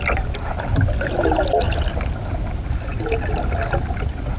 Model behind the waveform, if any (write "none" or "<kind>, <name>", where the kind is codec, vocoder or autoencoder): none